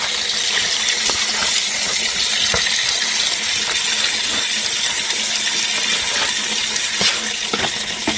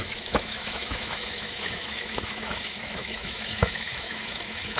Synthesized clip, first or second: second